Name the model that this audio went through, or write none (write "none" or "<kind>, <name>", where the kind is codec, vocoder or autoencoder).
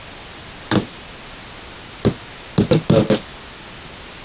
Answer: none